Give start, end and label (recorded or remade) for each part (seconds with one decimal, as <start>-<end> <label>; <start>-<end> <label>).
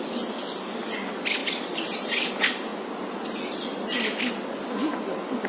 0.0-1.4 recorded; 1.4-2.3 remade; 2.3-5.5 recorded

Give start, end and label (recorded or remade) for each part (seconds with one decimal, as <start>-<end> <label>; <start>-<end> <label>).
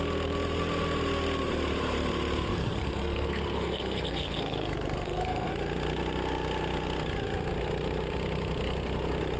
0.0-2.5 recorded; 2.5-5.5 remade; 5.5-9.4 recorded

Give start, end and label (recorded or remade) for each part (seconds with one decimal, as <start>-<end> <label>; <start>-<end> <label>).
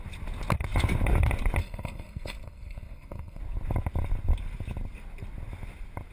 0.0-1.6 recorded; 1.6-3.4 remade; 3.4-6.1 recorded